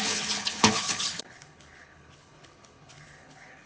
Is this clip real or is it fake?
fake